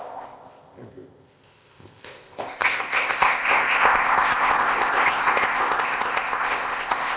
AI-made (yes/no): yes